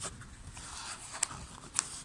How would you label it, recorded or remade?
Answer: recorded